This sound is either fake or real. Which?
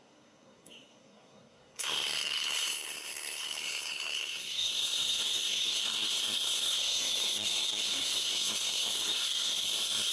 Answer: fake